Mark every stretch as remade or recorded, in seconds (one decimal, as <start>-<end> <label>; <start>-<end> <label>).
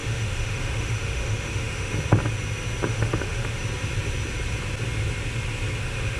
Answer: 0.0-1.9 remade; 1.9-2.9 recorded; 2.9-3.6 remade; 3.6-5.8 recorded; 5.8-6.2 remade